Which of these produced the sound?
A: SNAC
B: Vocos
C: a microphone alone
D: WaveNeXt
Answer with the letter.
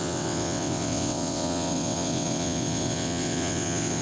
D